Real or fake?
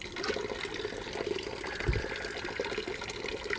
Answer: real